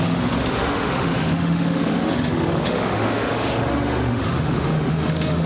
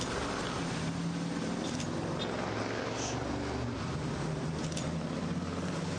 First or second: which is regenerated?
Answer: first